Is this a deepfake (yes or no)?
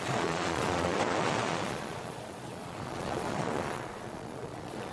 yes